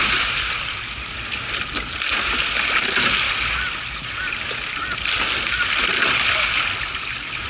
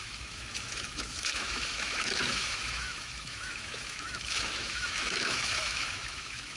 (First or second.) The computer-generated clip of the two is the second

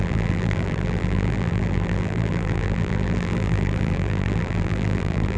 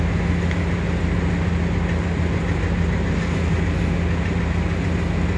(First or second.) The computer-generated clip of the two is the first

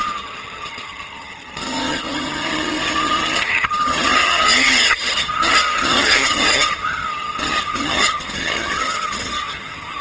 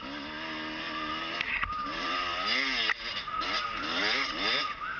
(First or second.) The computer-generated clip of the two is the first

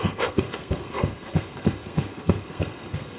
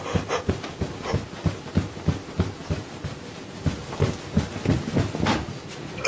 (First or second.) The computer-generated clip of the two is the first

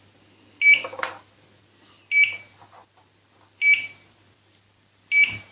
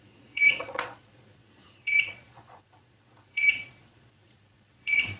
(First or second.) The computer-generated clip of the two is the second